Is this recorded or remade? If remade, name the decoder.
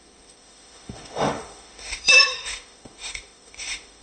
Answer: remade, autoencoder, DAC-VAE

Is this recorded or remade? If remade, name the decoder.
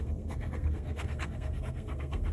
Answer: remade, codec, SNAC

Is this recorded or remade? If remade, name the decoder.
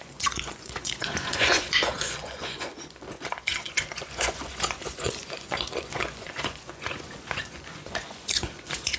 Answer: remade, vocoder, Vocos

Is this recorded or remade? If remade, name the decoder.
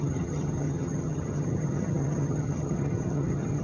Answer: remade, vocoder, HiFi-GAN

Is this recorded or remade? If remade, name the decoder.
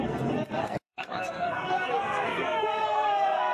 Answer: remade, codec, SNAC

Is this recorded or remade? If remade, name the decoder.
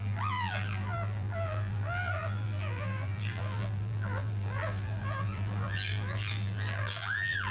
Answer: remade, vocoder, BigVGAN v2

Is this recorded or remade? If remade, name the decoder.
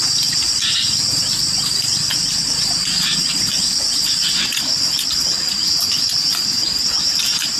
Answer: remade, vocoder, BigVGAN v2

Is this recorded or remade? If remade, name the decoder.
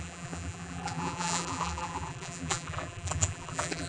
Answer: remade, vocoder, BigVGAN v2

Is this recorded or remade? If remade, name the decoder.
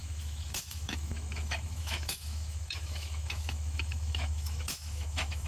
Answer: remade, autoencoder, DAC-VAE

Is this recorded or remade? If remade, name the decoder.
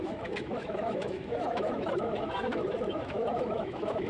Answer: remade, autoencoder, DAC-VAE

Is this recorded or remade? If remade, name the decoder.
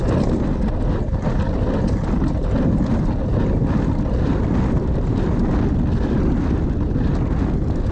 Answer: recorded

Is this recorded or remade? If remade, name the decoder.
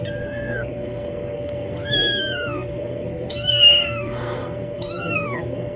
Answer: remade, codec, SNAC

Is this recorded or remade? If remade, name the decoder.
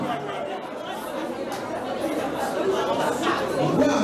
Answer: recorded